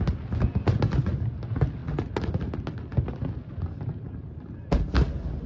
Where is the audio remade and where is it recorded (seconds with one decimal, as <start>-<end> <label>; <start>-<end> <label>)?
0.0-5.5 recorded